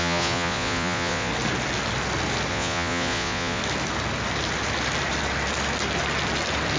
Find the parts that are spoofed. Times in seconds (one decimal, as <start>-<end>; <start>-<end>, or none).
0.0-1.3; 2.5-3.6